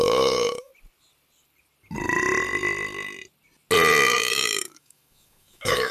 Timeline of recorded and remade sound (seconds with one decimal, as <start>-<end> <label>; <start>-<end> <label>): 0.0-0.7 remade; 0.7-4.2 recorded; 4.2-5.9 remade